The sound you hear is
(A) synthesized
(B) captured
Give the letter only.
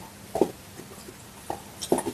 B